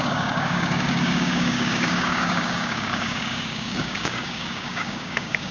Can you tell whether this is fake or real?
fake